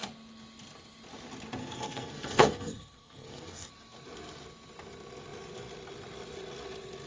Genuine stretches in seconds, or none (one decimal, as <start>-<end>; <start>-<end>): 0.0-1.6; 3.7-7.1